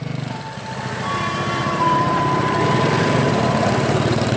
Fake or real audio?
fake